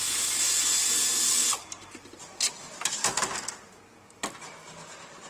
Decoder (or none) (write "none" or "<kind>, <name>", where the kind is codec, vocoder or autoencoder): none